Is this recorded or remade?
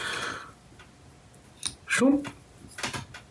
recorded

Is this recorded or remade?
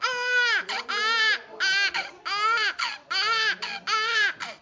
recorded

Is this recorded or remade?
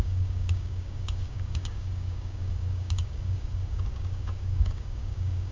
remade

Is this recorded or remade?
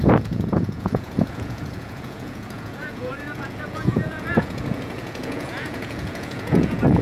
remade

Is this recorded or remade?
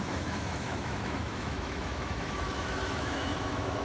remade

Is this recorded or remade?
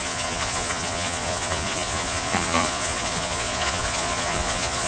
remade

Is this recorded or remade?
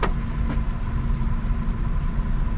recorded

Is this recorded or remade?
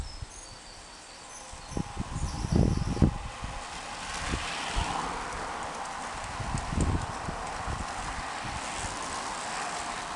recorded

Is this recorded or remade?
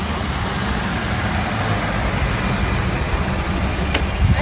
recorded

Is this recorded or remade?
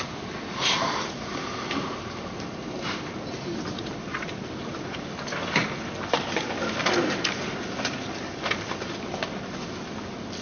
recorded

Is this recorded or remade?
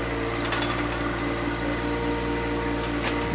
recorded